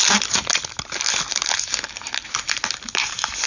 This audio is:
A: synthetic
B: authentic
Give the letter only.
B